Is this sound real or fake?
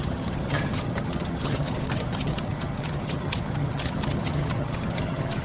fake